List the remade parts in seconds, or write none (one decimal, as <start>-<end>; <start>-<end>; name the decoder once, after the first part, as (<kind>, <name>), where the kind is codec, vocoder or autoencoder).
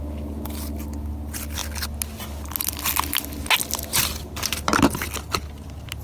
none